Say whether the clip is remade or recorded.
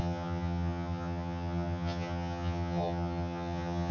remade